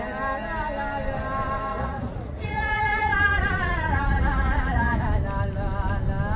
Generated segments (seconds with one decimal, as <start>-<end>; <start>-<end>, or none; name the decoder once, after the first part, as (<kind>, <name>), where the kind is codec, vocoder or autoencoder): 1.7-5.0 (vocoder, Vocos)